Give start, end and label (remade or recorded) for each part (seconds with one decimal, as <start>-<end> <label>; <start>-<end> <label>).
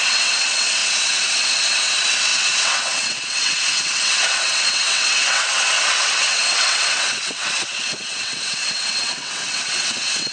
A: 0.0-10.3 remade